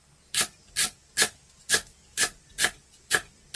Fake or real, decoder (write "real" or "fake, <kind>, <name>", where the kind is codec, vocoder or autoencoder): real